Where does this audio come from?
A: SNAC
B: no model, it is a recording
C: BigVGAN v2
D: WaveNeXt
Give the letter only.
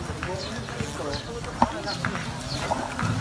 B